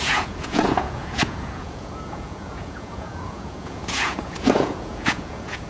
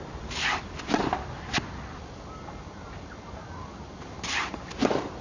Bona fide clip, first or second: second